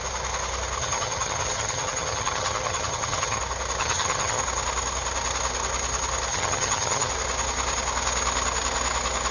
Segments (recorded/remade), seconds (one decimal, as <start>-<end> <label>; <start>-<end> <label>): 0.0-0.8 recorded; 0.8-3.4 remade; 3.4-3.8 recorded; 3.8-4.4 remade; 4.4-6.3 recorded; 6.3-7.1 remade; 7.1-9.3 recorded